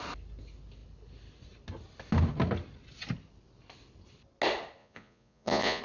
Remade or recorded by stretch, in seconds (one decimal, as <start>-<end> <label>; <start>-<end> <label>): 0.0-4.8 recorded; 4.8-5.8 remade